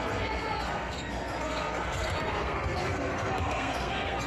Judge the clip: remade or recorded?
remade